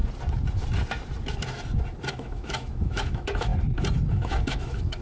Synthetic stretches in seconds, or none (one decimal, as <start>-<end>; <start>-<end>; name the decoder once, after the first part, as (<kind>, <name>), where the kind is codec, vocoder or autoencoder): 2.1-3.5 (autoencoder, DAC-VAE); 4.1-5.0